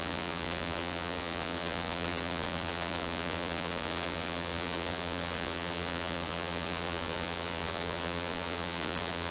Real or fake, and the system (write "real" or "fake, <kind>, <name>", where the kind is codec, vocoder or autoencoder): fake, vocoder, Vocos